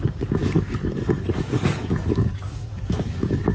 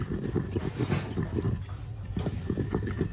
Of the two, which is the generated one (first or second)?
first